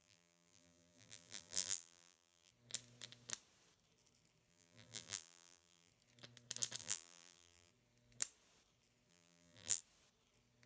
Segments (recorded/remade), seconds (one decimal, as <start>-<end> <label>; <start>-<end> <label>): 0.0-2.5 remade; 2.5-4.5 recorded; 4.5-5.9 remade; 5.9-6.8 recorded; 6.8-7.7 remade; 7.7-9.1 recorded; 9.1-9.8 remade; 9.8-10.7 recorded